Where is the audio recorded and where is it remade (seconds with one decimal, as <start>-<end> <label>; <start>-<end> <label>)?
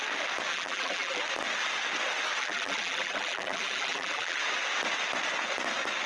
0.0-0.5 recorded; 0.5-1.2 remade; 1.2-2.4 recorded; 2.4-4.4 remade; 4.4-6.1 recorded